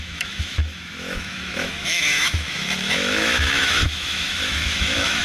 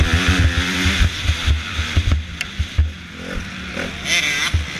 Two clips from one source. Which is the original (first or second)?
second